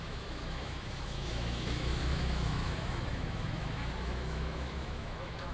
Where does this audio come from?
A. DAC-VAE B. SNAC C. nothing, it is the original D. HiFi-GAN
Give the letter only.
A